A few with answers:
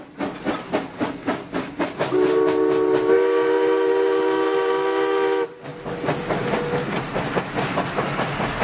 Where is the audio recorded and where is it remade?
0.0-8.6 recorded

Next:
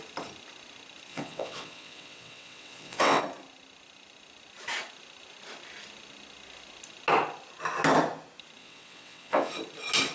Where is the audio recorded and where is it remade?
0.0-1.1 recorded; 1.1-3.2 remade; 3.2-8.6 recorded; 8.6-9.5 remade; 9.5-10.1 recorded

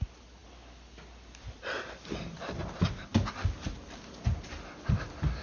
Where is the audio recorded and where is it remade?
0.0-5.4 recorded

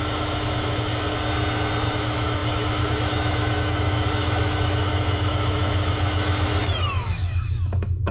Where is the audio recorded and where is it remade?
0.0-0.9 remade; 0.9-1.9 recorded; 1.9-8.1 remade